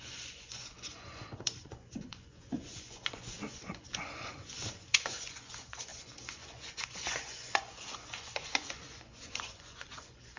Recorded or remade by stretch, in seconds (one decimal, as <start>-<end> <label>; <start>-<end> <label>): 0.0-10.4 remade

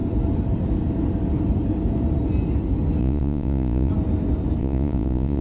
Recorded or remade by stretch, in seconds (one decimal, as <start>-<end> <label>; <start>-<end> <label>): 0.0-3.0 recorded; 3.0-3.9 remade; 3.9-4.6 recorded; 4.6-5.4 remade

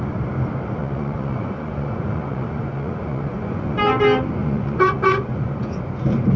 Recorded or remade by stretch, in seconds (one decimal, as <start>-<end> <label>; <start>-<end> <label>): 0.0-0.8 recorded; 0.8-3.8 remade; 3.8-4.4 recorded; 4.4-5.8 remade; 5.8-6.4 recorded